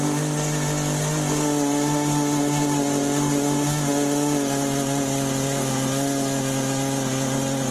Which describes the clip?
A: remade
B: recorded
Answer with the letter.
B